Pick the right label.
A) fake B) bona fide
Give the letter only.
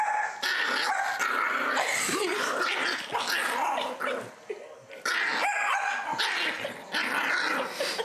B